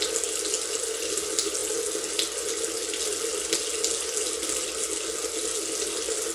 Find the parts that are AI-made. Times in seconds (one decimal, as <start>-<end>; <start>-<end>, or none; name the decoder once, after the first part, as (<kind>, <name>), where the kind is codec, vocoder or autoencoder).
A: none